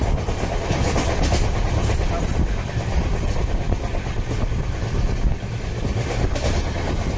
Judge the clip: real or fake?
real